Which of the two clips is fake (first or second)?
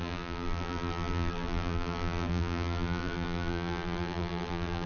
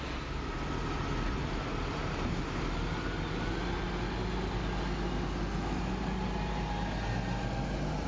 first